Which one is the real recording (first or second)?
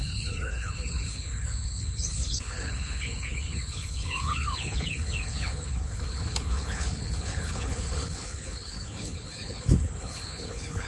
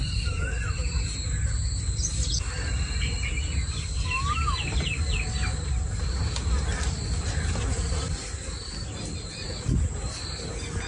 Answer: second